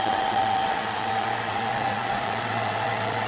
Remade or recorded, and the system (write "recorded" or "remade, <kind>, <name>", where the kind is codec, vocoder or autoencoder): remade, vocoder, WaveNeXt